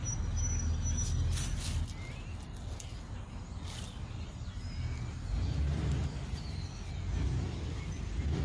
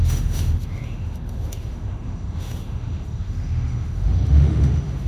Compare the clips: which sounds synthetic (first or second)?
second